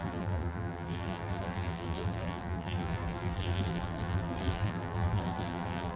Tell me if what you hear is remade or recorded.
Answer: remade